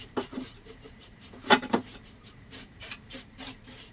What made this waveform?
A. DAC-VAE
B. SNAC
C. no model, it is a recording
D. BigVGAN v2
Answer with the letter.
D